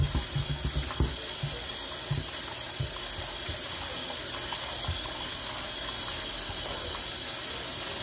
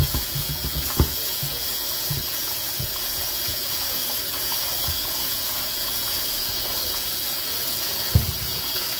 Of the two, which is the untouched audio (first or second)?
first